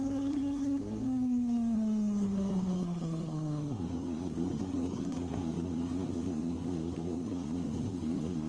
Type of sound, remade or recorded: remade